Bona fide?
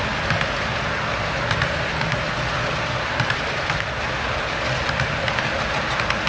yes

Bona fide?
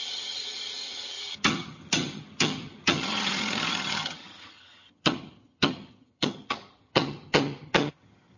no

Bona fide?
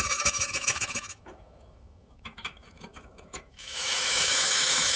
no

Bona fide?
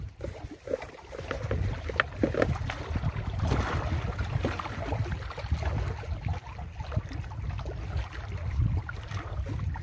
yes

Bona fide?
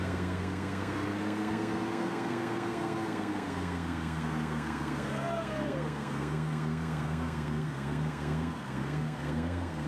no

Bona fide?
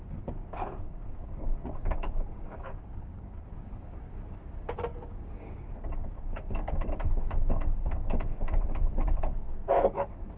no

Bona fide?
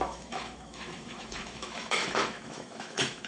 no